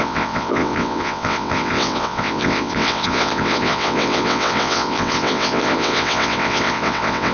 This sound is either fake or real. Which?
fake